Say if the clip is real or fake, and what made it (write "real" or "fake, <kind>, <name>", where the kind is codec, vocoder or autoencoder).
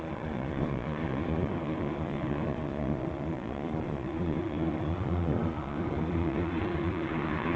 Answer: fake, vocoder, Vocos